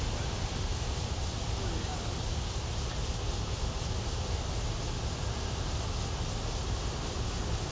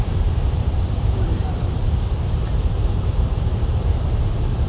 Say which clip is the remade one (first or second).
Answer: second